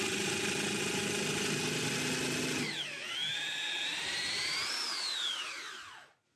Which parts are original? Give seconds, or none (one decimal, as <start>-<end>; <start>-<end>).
0.0-3.9; 5.7-6.4